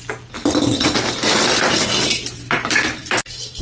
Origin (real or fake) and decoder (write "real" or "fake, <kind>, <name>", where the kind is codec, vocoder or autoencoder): real